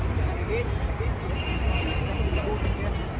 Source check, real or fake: real